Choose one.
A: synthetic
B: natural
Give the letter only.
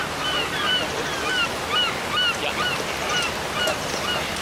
B